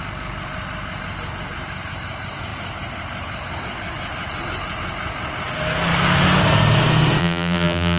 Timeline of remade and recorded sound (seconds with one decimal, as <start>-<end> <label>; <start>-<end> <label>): 0.0-7.2 recorded; 7.2-8.0 remade